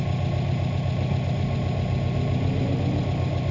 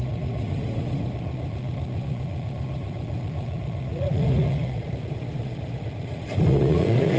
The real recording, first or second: first